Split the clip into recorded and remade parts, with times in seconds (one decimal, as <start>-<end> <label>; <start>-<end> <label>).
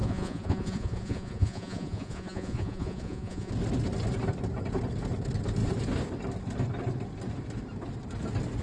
0.0-3.5 remade; 3.5-8.6 recorded